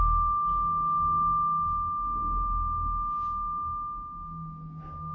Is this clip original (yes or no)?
yes